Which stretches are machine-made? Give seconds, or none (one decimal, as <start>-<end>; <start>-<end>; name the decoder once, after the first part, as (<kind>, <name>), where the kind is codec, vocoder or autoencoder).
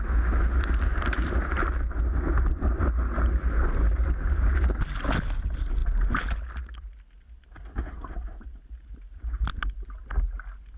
none